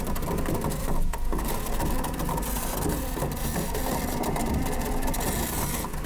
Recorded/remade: recorded